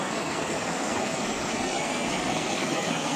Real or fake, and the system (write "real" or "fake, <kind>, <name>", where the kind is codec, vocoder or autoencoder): fake, codec, SNAC